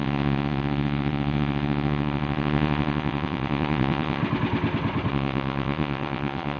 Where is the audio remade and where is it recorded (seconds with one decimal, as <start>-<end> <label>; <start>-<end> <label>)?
0.0-4.2 remade; 4.2-5.1 recorded; 5.1-6.6 remade